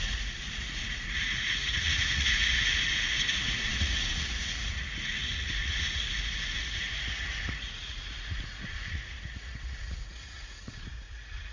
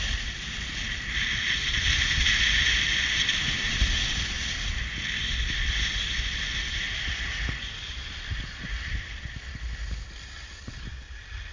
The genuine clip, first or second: second